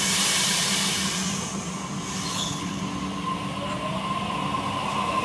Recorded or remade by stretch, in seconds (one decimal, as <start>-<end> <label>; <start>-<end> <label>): 0.0-2.3 recorded; 2.3-2.8 remade; 2.8-5.2 recorded